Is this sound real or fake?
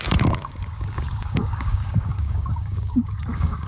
fake